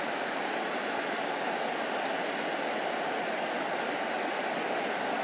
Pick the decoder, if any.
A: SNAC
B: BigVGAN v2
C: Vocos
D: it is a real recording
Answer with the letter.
D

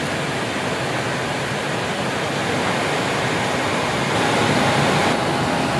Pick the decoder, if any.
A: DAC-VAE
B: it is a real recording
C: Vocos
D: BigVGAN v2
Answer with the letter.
B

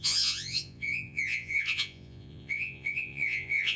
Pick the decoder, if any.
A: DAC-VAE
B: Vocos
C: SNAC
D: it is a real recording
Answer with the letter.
B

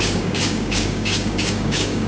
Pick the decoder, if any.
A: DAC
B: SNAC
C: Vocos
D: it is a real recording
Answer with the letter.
A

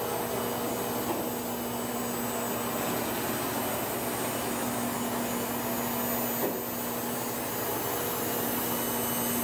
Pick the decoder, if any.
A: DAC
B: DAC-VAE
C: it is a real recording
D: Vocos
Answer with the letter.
C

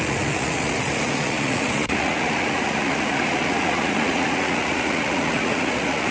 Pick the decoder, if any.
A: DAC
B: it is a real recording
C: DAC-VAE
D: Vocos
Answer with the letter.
D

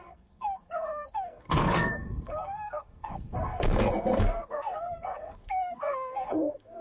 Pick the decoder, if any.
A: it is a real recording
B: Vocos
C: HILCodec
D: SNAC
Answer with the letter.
D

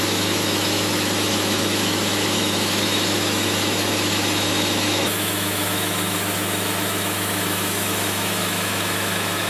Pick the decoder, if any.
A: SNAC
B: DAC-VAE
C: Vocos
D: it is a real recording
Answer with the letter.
B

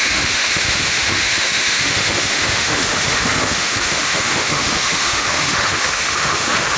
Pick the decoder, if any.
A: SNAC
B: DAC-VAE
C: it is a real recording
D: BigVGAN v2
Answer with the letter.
B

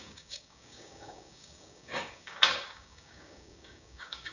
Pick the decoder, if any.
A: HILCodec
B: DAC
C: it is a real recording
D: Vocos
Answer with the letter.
B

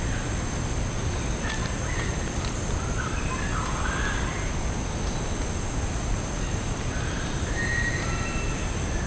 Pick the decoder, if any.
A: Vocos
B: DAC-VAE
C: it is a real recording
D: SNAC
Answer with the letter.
C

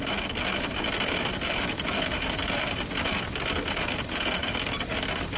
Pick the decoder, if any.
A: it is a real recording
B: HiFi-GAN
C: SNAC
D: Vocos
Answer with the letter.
A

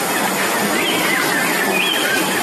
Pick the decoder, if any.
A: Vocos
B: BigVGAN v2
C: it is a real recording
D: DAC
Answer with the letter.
C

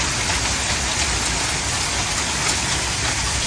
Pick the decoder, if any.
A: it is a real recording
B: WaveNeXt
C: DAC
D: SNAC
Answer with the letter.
A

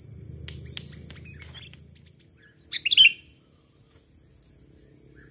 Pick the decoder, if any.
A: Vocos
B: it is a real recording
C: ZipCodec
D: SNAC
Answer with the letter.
B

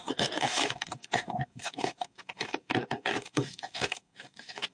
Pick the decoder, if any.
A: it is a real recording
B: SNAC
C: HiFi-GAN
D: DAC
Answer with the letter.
D